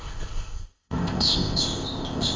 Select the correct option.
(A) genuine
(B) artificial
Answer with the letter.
B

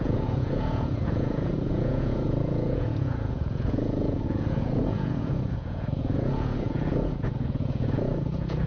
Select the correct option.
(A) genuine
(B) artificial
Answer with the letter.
B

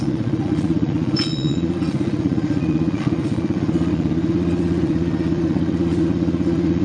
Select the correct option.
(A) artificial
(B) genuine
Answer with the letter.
A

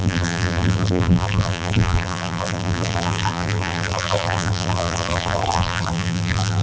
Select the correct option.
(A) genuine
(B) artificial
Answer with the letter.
B